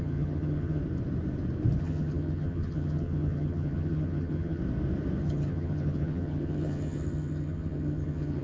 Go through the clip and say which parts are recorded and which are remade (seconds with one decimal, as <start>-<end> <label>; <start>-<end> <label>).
0.0-0.8 remade; 0.8-1.8 recorded; 1.8-4.6 remade; 4.6-5.2 recorded; 5.2-8.4 remade

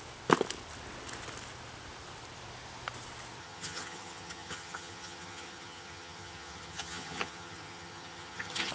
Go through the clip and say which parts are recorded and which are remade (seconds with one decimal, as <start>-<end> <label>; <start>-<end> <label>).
0.0-3.4 recorded; 3.4-8.7 remade

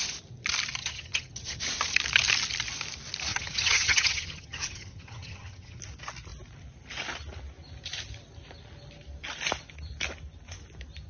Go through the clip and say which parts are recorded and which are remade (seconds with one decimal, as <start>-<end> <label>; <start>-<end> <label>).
0.0-0.8 recorded; 0.8-1.6 remade; 1.6-3.3 recorded; 3.3-5.8 remade; 5.8-11.1 recorded